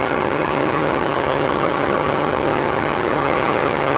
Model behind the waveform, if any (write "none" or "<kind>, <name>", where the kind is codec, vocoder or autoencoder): vocoder, HiFi-GAN